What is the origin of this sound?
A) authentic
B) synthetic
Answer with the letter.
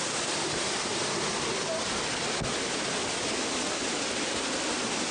A